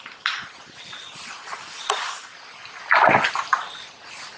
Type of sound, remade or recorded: recorded